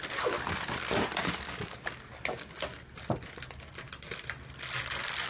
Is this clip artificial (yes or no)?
no